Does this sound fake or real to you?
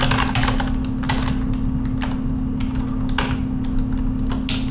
real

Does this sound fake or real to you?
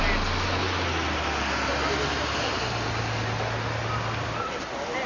real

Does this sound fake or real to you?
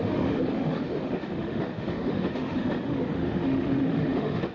fake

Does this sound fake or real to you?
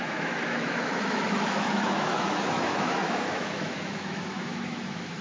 fake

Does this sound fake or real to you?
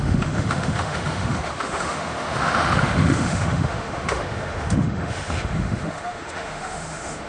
fake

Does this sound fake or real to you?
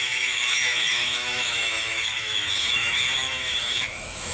fake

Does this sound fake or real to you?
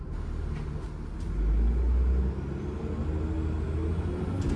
real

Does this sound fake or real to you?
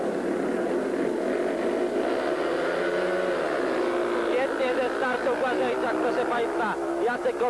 real